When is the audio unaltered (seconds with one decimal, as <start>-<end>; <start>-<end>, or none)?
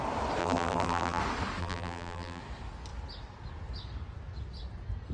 0.0-0.4; 1.2-1.6; 2.4-5.1